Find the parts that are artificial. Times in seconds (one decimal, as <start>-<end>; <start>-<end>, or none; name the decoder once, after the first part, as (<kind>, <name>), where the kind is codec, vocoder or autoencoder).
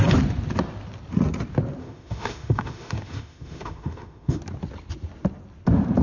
1.8-4.4 (autoencoder, DAC-VAE)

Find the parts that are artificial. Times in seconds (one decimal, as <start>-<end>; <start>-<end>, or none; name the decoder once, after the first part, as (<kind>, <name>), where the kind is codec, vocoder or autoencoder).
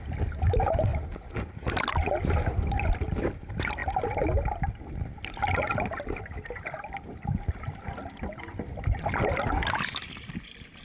none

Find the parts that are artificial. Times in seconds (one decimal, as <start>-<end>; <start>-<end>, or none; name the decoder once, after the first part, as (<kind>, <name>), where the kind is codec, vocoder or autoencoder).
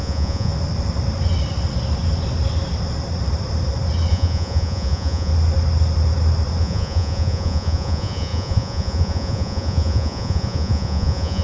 0.0-0.5 (vocoder, Vocos); 4.1-5.3; 6.6-11.4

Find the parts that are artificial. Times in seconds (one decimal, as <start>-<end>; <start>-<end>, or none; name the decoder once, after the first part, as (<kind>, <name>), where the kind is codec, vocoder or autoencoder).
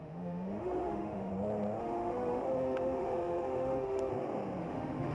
0.0-1.3 (autoencoder, DAC-VAE); 1.8-4.1; 4.6-5.1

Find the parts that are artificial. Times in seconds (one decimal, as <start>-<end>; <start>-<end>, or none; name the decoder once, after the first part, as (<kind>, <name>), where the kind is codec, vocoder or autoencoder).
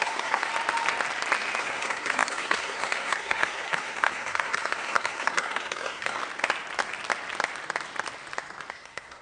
0.0-0.5 (codec, SNAC); 1.6-6.2; 8.7-9.2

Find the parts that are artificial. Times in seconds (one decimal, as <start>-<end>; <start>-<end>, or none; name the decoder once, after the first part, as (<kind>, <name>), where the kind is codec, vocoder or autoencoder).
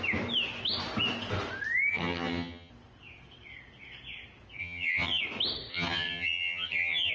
1.9-2.7 (vocoder, HiFi-GAN); 4.6-5.2; 5.7-7.1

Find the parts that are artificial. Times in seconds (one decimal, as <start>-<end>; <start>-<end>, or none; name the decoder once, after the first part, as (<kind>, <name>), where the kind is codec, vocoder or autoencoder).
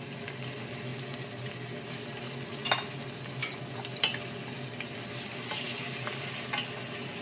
none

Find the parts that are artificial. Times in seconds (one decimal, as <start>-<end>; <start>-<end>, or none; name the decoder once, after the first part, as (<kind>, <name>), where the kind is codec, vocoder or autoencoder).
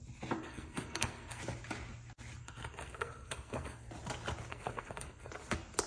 0.4-1.4 (codec, SNAC); 2.4-3.9; 4.5-5.3